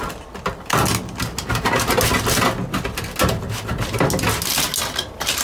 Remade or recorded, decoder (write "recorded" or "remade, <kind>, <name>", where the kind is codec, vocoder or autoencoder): recorded